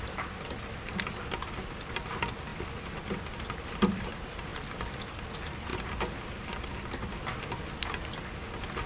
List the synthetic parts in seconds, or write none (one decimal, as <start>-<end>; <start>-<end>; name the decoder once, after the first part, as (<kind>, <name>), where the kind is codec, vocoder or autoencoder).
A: none